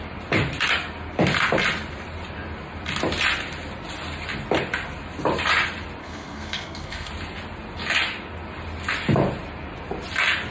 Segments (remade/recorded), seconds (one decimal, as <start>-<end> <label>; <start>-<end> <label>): 0.0-6.0 recorded; 6.0-7.1 remade; 7.1-10.5 recorded